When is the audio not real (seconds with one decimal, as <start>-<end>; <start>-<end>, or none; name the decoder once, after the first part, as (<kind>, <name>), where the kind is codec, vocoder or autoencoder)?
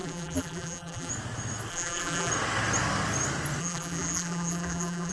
0.0-1.1 (vocoder, BigVGAN v2); 1.7-2.3; 3.6-5.1